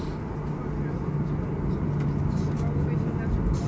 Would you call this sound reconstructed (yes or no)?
no